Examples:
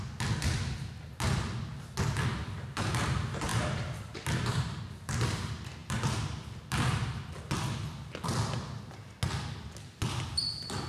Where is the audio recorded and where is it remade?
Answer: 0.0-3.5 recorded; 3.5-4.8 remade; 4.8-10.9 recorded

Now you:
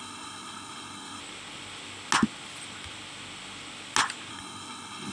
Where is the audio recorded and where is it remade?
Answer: 0.0-1.2 remade; 1.2-4.3 recorded; 4.3-5.1 remade

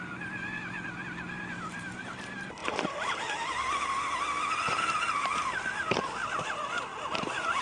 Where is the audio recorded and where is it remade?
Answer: 0.0-2.6 remade; 2.6-4.8 recorded; 4.8-7.6 remade

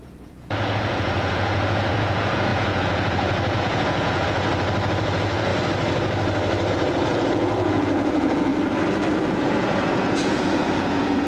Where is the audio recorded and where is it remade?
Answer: 0.0-4.5 remade; 4.5-5.0 recorded; 5.0-5.5 remade; 5.5-6.7 recorded; 6.7-8.5 remade; 8.5-9.2 recorded; 9.2-11.3 remade

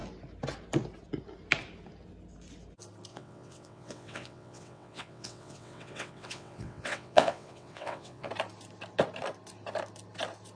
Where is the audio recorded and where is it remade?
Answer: 0.0-3.1 recorded; 3.1-8.3 remade; 8.3-10.6 recorded

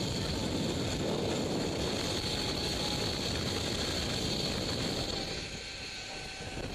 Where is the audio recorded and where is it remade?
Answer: 0.0-6.7 recorded

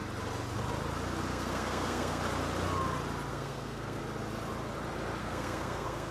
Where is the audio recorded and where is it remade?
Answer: 0.0-1.3 recorded; 1.3-2.2 remade; 2.2-3.3 recorded; 3.3-4.0 remade; 4.0-5.2 recorded; 5.2-6.1 remade